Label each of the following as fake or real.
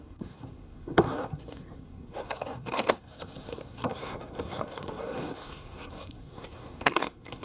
fake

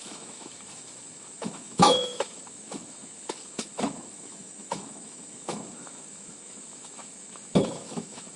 fake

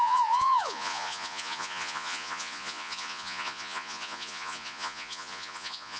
fake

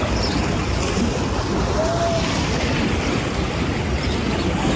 real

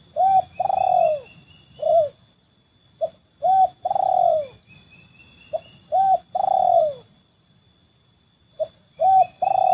real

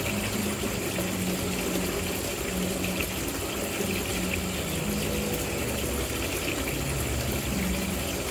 real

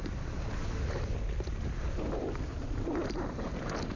real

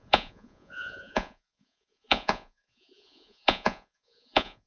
fake